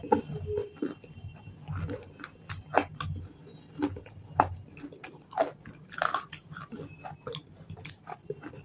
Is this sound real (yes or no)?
yes